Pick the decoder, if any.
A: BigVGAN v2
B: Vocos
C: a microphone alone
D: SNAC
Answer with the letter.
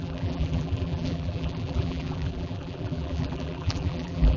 A